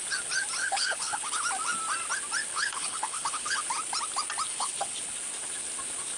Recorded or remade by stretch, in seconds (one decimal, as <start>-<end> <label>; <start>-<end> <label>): 0.0-0.6 recorded; 0.6-1.4 remade; 1.4-2.5 recorded; 2.5-3.6 remade; 3.6-4.5 recorded; 4.5-5.0 remade; 5.0-6.2 recorded